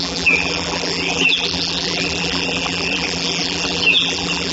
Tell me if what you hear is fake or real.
fake